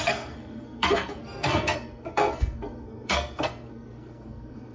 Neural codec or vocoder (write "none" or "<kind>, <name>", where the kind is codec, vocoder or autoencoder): codec, SNAC